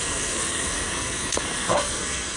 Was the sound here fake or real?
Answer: fake